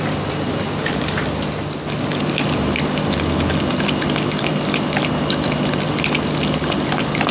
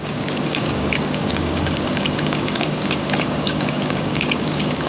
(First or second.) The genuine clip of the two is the first